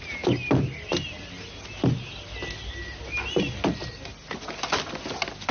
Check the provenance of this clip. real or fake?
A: real